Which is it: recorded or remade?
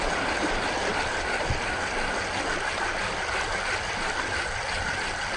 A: recorded